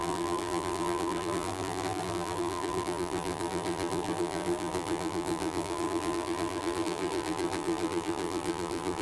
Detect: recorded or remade remade